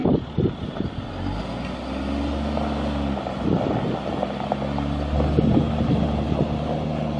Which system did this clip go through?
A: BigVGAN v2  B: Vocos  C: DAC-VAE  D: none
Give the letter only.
D